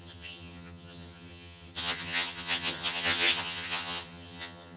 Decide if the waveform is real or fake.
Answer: fake